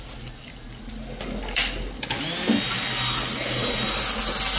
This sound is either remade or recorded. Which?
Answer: recorded